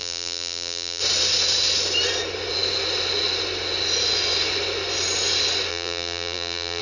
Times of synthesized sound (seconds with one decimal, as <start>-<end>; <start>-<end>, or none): 0.0-1.0; 5.7-6.8